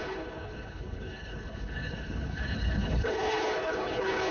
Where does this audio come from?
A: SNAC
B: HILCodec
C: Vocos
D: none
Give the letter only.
B